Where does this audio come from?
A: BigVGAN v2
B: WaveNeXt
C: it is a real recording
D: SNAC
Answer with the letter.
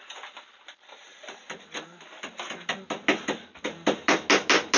C